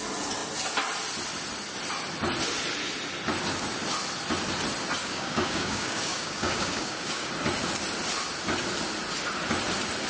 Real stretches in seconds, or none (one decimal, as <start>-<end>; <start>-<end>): 0.0-5.0; 7.3-10.1